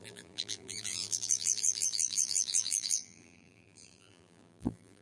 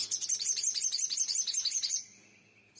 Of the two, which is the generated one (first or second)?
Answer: first